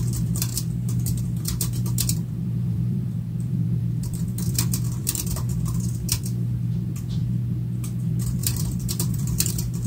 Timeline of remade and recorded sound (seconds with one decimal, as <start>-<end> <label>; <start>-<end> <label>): 0.0-0.5 remade; 0.5-1.2 recorded; 1.2-7.2 remade; 7.2-8.0 recorded; 8.0-9.9 remade